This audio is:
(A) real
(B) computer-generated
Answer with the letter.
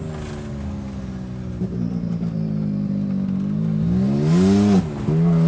A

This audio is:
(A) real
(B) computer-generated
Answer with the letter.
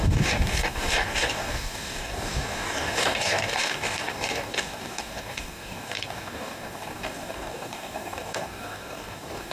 B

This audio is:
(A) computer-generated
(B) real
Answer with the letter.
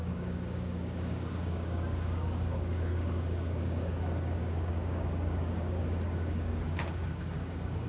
A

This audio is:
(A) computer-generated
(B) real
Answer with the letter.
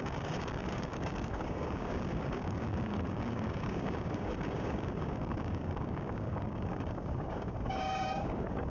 A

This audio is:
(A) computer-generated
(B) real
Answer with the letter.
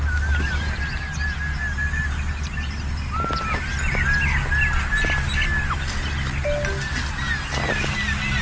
B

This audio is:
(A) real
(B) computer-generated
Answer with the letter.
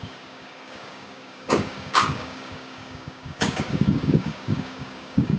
B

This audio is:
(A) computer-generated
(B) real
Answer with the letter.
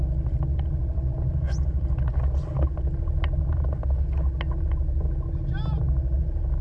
B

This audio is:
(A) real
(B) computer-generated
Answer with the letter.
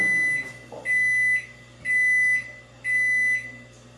A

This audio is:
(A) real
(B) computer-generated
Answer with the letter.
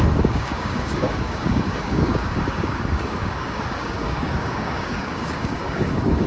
B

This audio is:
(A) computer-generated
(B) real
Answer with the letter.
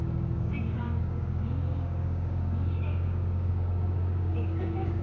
A